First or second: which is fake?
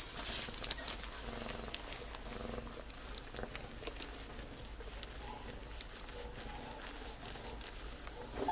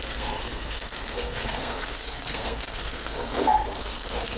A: second